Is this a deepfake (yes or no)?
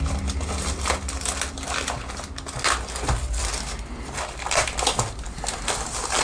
no